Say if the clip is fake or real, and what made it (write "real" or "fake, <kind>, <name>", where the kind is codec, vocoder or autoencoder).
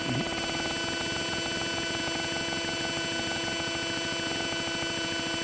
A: real